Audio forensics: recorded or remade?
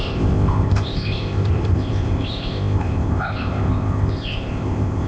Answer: remade